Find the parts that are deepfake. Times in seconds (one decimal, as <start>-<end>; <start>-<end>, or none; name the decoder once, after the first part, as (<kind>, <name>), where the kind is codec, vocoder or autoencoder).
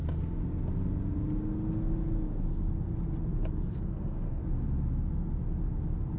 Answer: 3.7-4.4 (codec, SNAC)